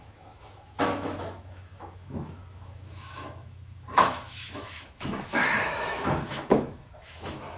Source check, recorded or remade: remade